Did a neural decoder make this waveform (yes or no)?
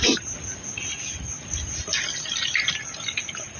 no